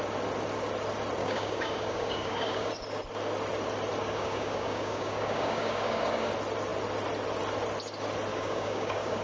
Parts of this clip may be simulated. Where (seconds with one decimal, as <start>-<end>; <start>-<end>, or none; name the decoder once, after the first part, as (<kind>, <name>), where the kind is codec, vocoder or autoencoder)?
1.2-2.7 (codec, DAC); 4.0-6.3; 8.3-9.2